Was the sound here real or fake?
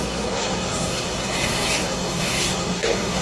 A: fake